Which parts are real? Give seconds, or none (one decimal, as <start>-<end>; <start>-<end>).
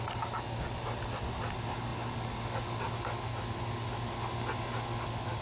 0.0-5.4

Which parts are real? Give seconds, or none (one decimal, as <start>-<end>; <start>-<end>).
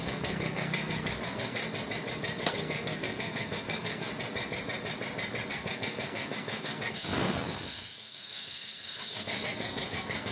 1.6-2.4; 4.1-5.5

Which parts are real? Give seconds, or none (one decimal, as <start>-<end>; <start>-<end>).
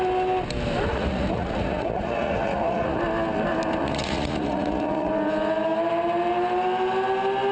0.0-0.9; 3.0-3.8; 5.1-7.5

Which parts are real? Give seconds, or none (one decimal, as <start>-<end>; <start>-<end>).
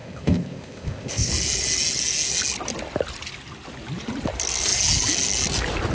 1.3-5.9